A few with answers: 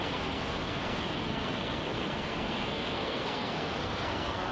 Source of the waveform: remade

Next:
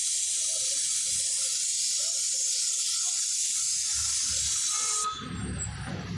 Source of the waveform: recorded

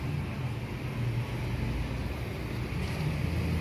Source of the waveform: recorded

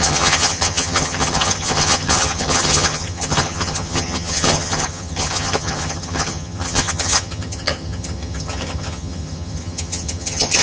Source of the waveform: remade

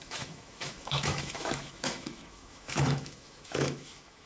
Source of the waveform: remade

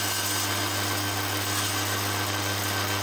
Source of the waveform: recorded